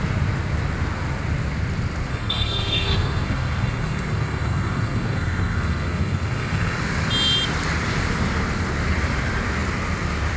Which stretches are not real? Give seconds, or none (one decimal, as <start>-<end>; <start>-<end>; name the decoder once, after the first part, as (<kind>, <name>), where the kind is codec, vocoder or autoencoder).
2.1-6.8 (codec, SNAC)